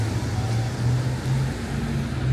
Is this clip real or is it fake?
real